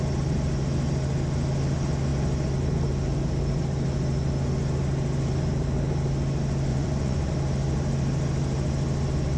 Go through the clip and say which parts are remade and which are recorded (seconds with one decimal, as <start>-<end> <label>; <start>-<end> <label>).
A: 0.0-6.7 recorded; 6.7-7.3 remade; 7.3-9.4 recorded